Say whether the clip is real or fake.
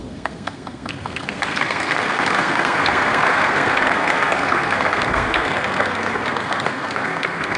fake